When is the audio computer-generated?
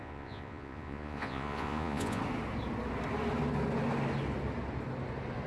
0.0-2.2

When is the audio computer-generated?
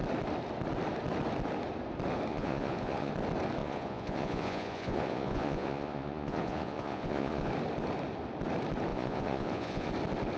2.3-3.1; 3.6-7.5; 8.9-9.9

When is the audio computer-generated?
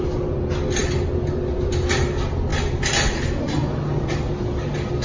none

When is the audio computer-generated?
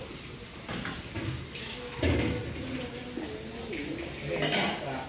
1.2-2.4